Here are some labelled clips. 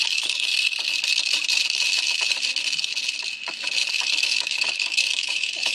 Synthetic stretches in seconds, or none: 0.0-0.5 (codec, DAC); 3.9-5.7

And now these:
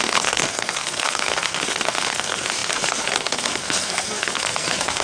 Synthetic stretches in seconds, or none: 0.0-5.0 (codec, SNAC)

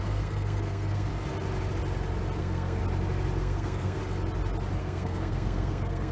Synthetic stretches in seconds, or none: 0.0-1.1 (codec, SNAC); 2.4-2.8; 3.4-4.0; 4.8-6.1

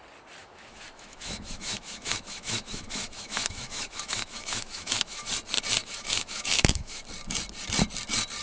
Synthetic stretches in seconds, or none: 0.4-5.3 (autoencoder, DAC-VAE); 5.8-7.0

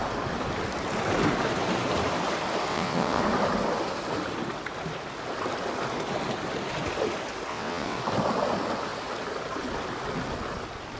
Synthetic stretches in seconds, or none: 2.7-3.2 (vocoder, WaveNeXt); 7.5-8.0

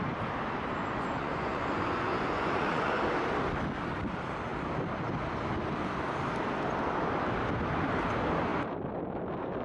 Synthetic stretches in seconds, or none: 0.8-3.0 (vocoder, Vocos)

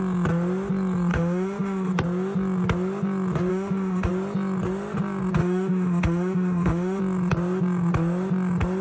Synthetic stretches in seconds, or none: 1.1-1.9 (autoencoder, DAC-VAE); 3.5-4.1; 5.4-7.0